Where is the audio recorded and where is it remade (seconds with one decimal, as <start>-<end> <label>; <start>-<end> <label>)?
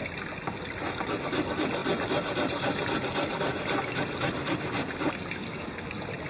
0.0-6.3 recorded